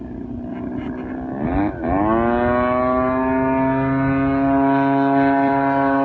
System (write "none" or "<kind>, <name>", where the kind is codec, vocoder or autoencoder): none